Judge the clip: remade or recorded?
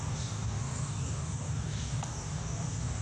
remade